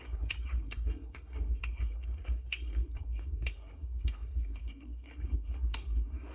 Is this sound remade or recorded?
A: remade